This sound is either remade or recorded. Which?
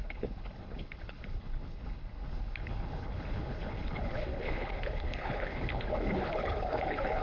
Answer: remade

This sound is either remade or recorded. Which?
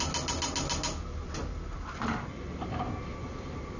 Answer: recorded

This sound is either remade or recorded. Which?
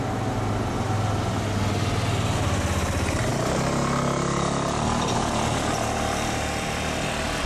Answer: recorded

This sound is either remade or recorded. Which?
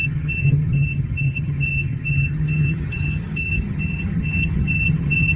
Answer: remade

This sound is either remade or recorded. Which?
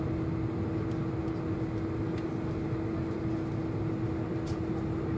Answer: recorded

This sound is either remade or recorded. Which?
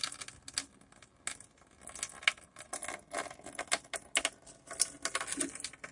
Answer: recorded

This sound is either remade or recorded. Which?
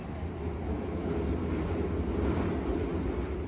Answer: recorded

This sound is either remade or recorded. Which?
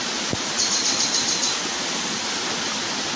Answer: recorded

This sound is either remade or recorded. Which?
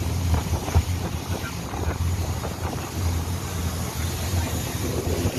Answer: remade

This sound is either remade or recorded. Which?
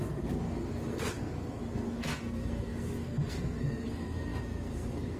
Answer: remade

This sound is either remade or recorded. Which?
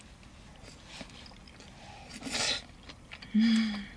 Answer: recorded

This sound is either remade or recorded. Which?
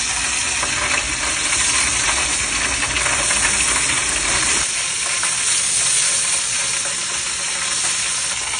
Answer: recorded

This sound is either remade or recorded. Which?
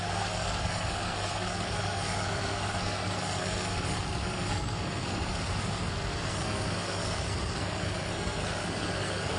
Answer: remade